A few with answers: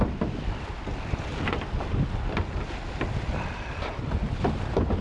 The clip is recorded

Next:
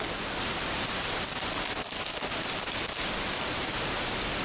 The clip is recorded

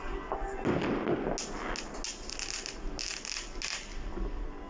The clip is recorded